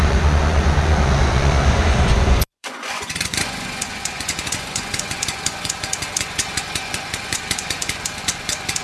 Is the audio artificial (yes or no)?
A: yes